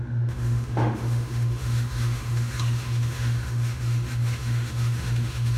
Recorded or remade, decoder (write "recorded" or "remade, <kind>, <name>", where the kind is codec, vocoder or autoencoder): remade, autoencoder, DAC-VAE